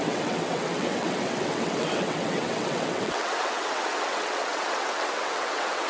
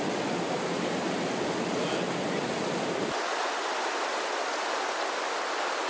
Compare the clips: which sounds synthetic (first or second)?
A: first